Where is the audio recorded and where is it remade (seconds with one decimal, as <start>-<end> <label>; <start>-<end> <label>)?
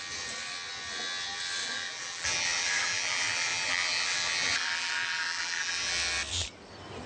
0.0-1.6 recorded; 1.6-5.9 remade; 5.9-7.1 recorded